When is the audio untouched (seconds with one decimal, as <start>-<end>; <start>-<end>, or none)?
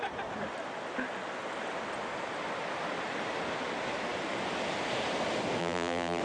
0.0-5.6